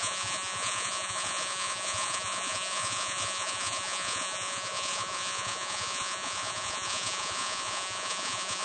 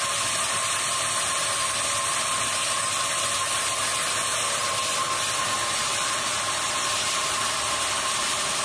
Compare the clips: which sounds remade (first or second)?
first